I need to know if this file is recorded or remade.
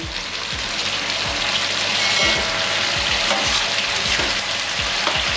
recorded